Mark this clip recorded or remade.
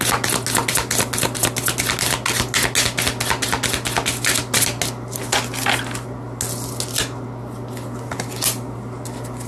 recorded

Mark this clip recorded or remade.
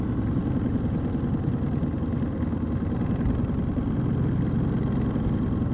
recorded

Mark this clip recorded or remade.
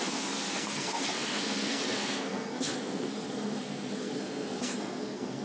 remade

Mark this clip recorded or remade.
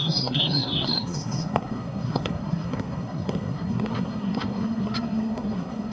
remade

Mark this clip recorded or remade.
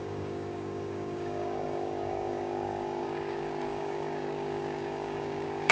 remade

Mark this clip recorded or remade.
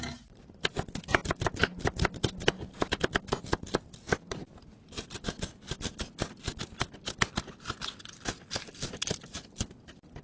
recorded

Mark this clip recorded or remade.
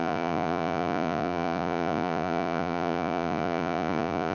remade